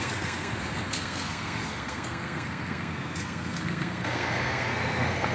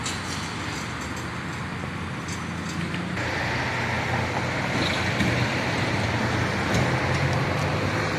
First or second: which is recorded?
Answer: second